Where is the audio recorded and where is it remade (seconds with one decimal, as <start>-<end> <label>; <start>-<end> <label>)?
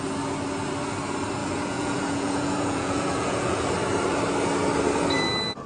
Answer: 0.0-1.4 recorded; 1.4-3.7 remade; 3.7-5.7 recorded